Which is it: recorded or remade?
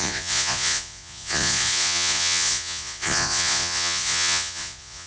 remade